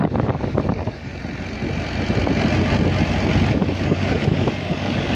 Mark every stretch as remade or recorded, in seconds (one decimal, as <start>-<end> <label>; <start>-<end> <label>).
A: 0.0-1.1 remade; 1.1-3.5 recorded; 3.5-5.2 remade

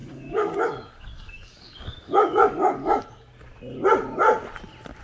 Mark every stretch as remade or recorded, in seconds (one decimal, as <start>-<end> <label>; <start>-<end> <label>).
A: 0.0-3.0 remade; 3.0-5.0 recorded

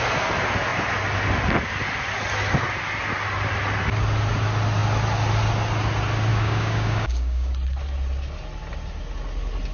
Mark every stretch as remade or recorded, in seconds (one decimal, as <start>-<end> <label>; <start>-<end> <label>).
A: 0.0-6.3 recorded; 6.3-7.5 remade; 7.5-9.7 recorded

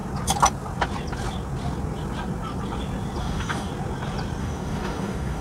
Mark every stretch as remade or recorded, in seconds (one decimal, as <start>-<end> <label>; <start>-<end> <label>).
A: 0.0-3.2 recorded; 3.2-3.7 remade; 3.7-4.4 recorded; 4.4-5.4 remade

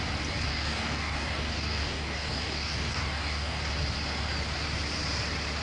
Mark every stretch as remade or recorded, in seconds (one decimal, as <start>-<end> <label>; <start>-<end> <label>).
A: 0.0-0.5 recorded; 0.5-3.6 remade; 3.6-5.6 recorded